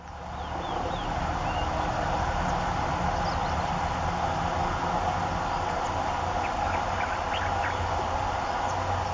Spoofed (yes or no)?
no